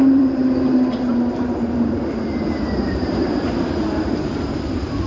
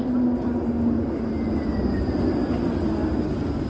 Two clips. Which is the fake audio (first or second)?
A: first